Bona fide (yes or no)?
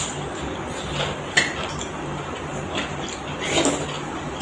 yes